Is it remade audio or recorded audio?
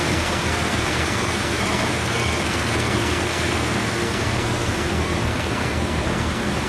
remade